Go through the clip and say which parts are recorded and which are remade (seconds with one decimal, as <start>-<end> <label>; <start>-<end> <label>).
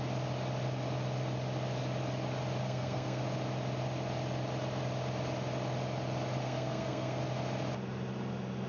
0.0-2.6 recorded; 2.6-3.2 remade; 3.2-6.4 recorded; 6.4-7.2 remade; 7.2-8.7 recorded